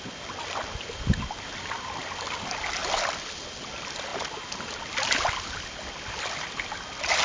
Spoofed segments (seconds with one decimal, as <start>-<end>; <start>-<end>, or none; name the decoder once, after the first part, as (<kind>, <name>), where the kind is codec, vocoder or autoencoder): none